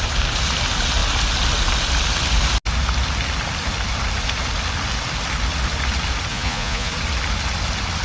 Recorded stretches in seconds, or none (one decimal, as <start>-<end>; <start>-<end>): 0.0-6.3; 6.9-8.0